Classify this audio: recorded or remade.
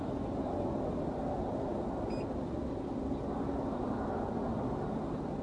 recorded